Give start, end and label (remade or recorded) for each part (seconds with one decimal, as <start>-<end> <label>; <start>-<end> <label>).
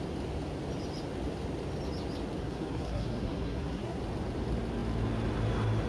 0.0-2.4 recorded; 2.4-4.0 remade; 4.0-5.9 recorded